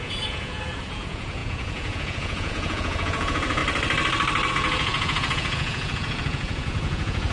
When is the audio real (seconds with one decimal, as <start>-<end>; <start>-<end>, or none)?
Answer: 3.6-4.5

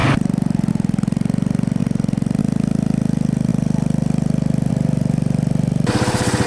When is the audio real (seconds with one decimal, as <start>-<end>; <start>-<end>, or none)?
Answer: 0.0-6.5

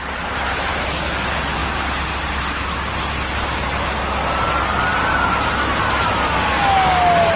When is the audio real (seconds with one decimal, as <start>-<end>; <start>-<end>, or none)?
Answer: 0.0-7.4

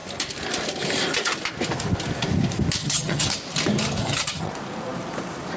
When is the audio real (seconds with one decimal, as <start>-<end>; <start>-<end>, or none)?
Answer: 0.0-2.8; 3.3-4.0; 4.5-5.6

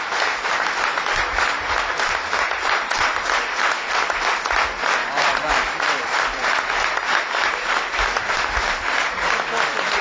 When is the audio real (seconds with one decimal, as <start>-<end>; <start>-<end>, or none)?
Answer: 0.0-10.0

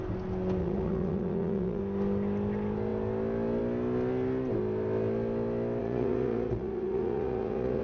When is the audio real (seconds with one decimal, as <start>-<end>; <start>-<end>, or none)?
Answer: 0.0-0.6; 1.8-5.8